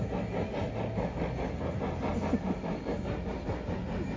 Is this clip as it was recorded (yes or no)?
yes